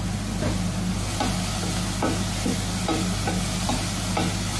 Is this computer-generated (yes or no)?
no